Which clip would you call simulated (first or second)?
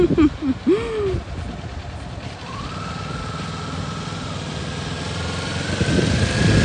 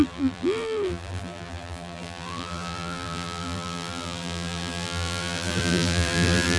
second